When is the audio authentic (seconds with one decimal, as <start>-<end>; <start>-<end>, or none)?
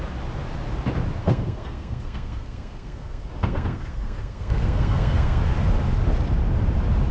0.0-1.2; 5.4-7.1